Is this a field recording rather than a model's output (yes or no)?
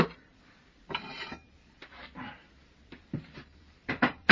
no